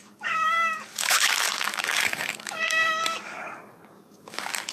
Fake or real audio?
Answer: fake